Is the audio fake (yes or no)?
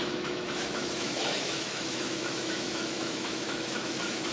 yes